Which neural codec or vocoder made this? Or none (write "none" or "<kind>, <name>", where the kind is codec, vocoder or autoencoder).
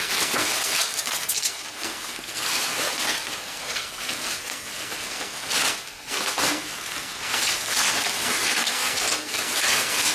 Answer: codec, SNAC